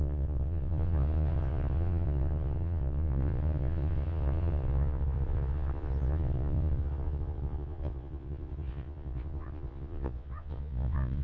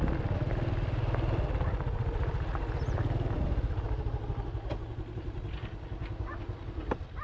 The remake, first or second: first